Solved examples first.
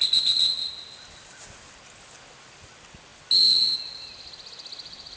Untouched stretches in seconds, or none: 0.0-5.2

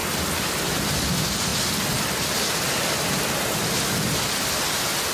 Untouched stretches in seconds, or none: 0.0-5.1

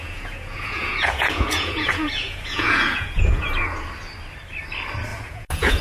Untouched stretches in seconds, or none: 3.5-5.1

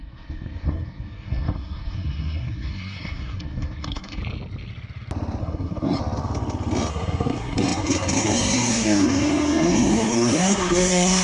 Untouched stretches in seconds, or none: 4.2-5.4; 6.0-6.9

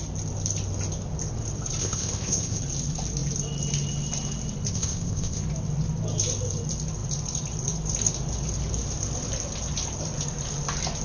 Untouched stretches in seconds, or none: 0.0-1.8; 2.6-4.7; 5.4-11.0

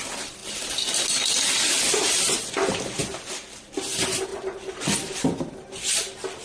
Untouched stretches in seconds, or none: 0.4-1.9; 3.0-3.9

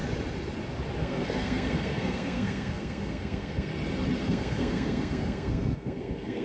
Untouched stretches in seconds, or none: 0.0-1.0; 3.7-4.2